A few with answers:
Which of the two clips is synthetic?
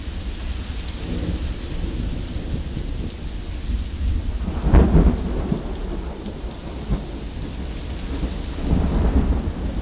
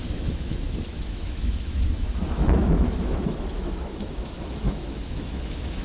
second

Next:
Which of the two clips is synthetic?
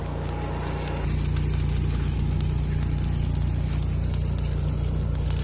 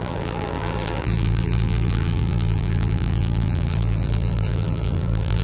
second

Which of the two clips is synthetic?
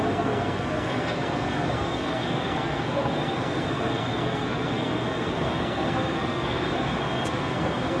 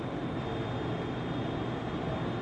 first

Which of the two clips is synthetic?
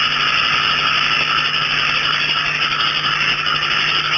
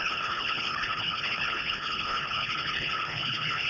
second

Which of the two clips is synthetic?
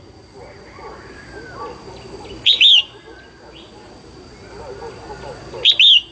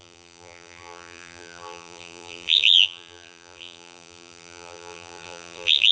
second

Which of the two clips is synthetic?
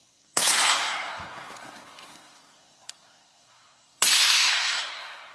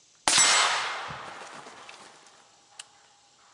first